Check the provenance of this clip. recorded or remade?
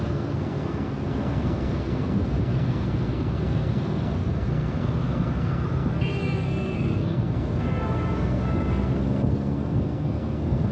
remade